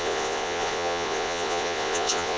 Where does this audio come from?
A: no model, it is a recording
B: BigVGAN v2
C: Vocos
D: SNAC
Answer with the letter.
C